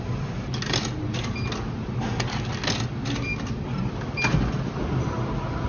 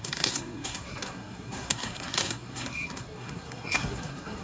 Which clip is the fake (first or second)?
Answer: second